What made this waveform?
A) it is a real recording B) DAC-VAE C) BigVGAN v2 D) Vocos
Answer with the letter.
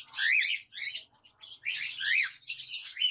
D